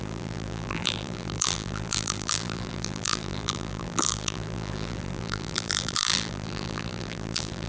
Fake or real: fake